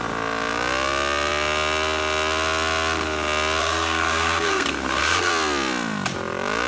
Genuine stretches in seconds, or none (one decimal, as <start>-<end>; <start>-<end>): 0.0-3.6; 5.3-6.7